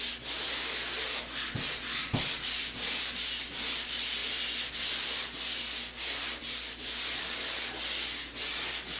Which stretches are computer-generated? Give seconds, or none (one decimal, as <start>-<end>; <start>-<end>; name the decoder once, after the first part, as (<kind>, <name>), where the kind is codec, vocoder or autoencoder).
none